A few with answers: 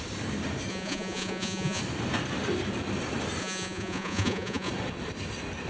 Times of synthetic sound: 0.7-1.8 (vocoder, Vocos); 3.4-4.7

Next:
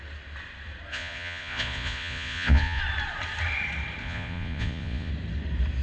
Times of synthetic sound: 0.9-2.8 (vocoder, Vocos); 4.0-5.1

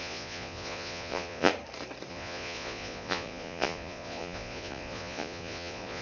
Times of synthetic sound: 0.0-1.5 (vocoder, Vocos); 2.1-6.0

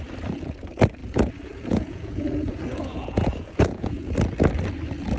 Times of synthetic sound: 1.0-4.1 (vocoder, Vocos)